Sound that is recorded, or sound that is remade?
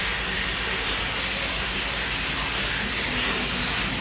recorded